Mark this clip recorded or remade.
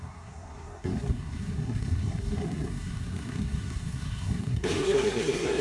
remade